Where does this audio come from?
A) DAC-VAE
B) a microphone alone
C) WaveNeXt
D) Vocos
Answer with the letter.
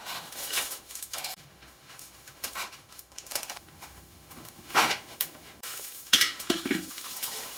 A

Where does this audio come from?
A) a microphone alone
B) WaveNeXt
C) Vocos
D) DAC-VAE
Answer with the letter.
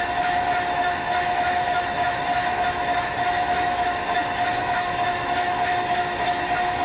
D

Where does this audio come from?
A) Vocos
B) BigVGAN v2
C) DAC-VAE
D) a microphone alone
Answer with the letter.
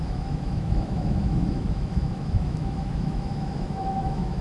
C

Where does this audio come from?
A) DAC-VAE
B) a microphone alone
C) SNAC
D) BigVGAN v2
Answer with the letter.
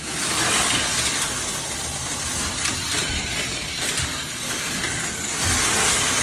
B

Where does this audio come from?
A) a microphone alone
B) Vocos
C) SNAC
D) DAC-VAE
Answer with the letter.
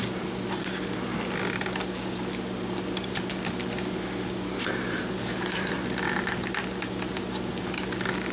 A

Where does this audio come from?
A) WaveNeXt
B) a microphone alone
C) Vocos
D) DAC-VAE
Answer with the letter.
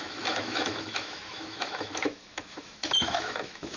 D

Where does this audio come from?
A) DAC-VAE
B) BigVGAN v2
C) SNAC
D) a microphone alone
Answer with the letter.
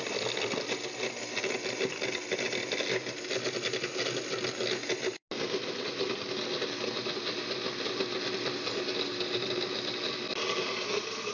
D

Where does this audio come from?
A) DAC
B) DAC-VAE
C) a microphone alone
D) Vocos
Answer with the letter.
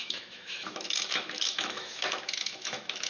B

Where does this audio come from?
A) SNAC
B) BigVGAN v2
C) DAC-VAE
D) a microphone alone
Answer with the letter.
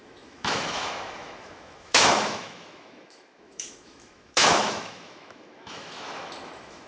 C